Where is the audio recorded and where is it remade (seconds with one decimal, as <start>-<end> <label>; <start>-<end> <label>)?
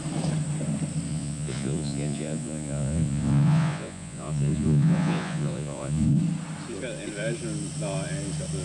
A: 0.0-1.1 recorded; 1.1-6.2 remade; 6.2-8.6 recorded